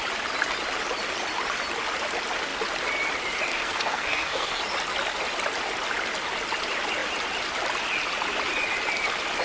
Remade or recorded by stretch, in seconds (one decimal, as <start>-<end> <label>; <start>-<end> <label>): 0.0-3.5 recorded; 3.5-4.6 remade; 4.6-9.4 recorded